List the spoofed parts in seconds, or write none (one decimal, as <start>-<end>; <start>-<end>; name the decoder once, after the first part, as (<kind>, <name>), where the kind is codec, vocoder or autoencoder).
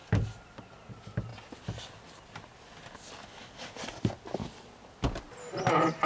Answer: none